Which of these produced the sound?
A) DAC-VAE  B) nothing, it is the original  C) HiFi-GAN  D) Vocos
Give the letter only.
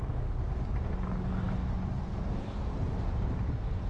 B